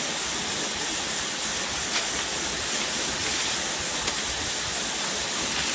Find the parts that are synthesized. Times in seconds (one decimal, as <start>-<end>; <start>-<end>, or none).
3.2-3.8